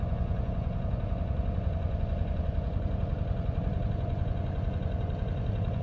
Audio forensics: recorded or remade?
remade